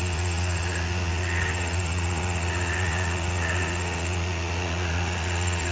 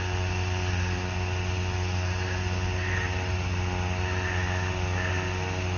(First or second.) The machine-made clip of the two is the first